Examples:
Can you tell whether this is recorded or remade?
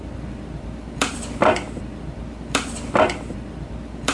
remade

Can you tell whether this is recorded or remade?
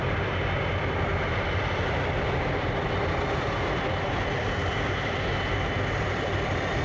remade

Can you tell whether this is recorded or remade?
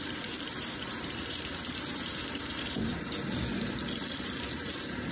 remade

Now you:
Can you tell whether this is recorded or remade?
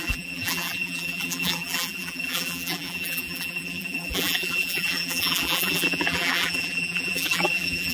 remade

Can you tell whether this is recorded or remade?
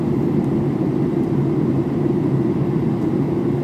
recorded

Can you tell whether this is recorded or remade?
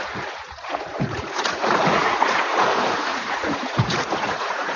remade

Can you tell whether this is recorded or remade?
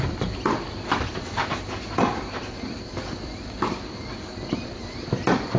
remade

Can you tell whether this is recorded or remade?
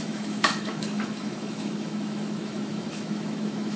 remade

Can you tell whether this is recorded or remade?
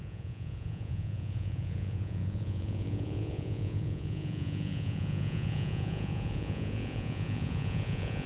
remade